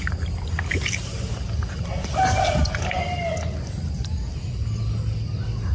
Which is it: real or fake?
real